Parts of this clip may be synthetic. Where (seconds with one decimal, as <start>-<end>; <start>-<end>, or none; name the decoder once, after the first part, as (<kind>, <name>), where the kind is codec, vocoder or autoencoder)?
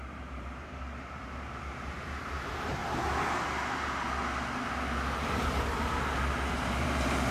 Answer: 0.0-2.8 (vocoder, BigVGAN v2); 6.5-7.3